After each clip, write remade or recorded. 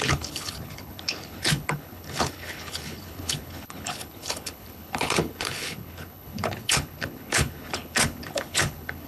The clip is remade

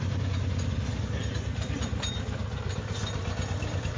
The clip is recorded